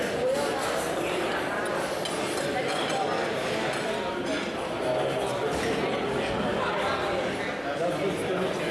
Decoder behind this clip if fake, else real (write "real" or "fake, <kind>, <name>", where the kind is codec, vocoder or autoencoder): real